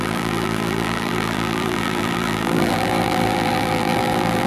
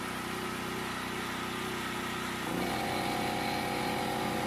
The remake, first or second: first